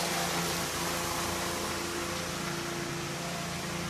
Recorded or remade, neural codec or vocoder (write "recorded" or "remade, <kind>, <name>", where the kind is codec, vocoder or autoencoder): recorded